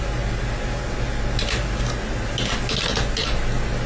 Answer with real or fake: real